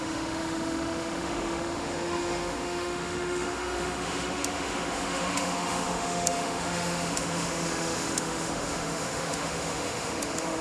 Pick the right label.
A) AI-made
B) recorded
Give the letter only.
A